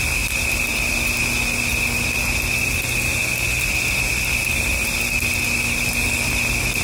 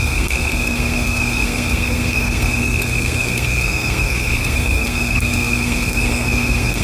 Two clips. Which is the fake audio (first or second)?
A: second